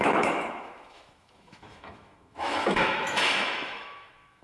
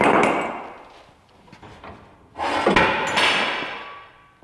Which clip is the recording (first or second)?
second